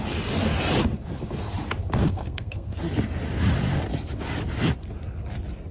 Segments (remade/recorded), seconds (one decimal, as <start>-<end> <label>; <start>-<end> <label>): 0.0-2.0 recorded; 2.0-2.8 remade; 2.8-5.7 recorded

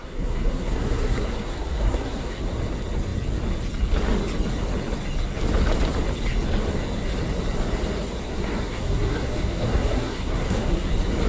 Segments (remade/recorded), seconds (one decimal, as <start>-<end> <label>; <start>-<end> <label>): 0.0-2.5 remade; 2.5-8.3 recorded; 8.3-10.9 remade; 10.9-11.3 recorded

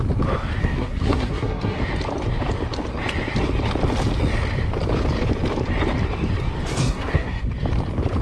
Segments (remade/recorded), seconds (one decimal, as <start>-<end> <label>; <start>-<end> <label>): 0.0-0.6 recorded; 0.6-1.8 remade; 1.8-6.8 recorded; 6.8-7.5 remade; 7.5-8.2 recorded

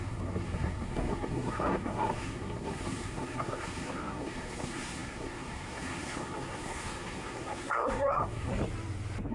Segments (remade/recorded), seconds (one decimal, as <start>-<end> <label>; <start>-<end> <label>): 0.0-8.5 remade; 8.5-9.3 recorded

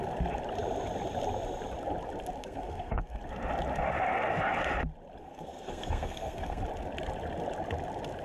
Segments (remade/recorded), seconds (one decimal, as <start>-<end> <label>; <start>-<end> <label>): 0.0-2.4 recorded; 2.4-3.2 remade; 3.2-5.2 recorded; 5.2-6.6 remade; 6.6-8.2 recorded

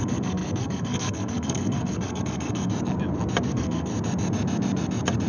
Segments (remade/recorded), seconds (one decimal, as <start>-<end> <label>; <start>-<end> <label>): 0.0-2.7 remade; 2.7-3.5 recorded; 3.5-3.9 remade; 3.9-5.3 recorded

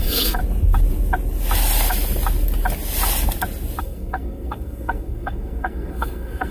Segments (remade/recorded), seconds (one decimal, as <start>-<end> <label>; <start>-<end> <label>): 0.0-0.4 remade; 0.4-3.8 recorded; 3.8-6.5 remade

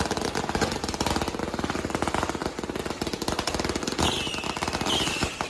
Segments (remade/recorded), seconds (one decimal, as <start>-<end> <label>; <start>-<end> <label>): 0.0-5.5 recorded